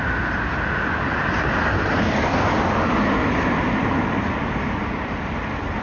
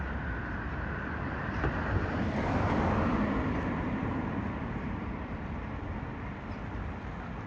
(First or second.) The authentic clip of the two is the first